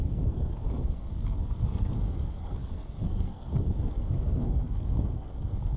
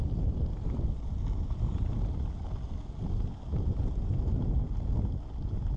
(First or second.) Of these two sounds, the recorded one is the second